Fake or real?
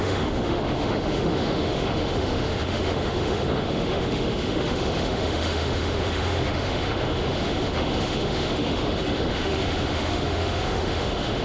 fake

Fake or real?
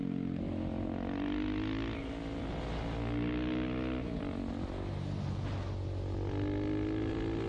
real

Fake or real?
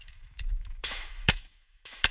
fake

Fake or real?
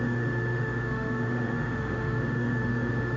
fake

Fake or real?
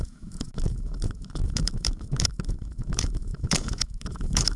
fake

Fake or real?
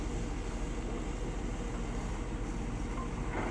real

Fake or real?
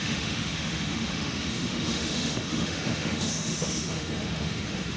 fake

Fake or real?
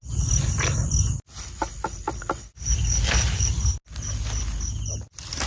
real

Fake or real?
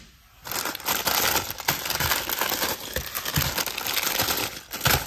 real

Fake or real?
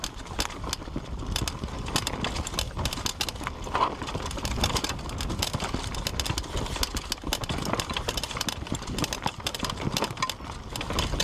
real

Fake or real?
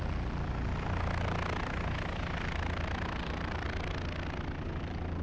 real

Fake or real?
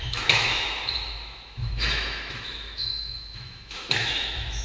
fake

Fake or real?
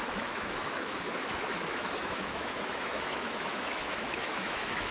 fake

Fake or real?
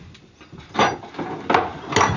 real